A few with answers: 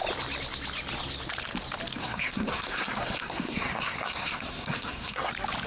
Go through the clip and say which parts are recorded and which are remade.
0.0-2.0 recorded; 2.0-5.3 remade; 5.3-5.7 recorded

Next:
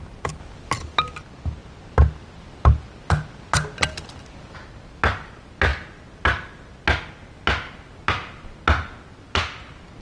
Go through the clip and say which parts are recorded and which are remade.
0.0-10.0 recorded

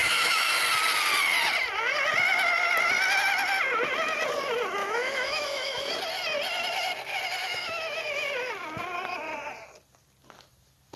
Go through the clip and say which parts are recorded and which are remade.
0.0-0.5 remade; 0.5-4.8 recorded; 4.8-5.9 remade; 5.9-7.4 recorded; 7.4-8.0 remade; 8.0-11.0 recorded